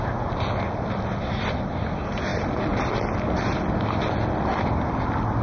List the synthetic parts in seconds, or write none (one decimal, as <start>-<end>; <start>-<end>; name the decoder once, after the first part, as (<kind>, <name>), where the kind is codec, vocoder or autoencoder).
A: none